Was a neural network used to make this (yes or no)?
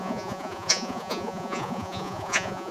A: yes